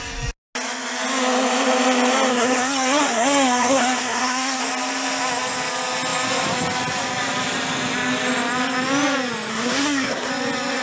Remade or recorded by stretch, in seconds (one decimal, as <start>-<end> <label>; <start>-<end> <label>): 0.0-2.3 recorded; 2.3-4.6 remade; 4.6-9.5 recorded; 9.5-10.3 remade; 10.3-10.8 recorded